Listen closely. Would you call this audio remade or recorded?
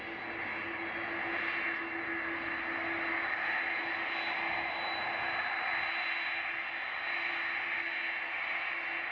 recorded